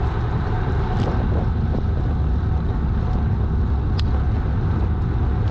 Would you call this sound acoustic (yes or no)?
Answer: yes